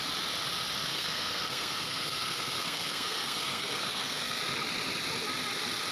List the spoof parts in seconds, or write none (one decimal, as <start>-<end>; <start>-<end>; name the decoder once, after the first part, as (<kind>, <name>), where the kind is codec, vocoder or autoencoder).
0.9-4.4 (codec, SNAC)